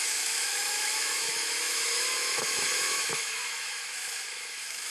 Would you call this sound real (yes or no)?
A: no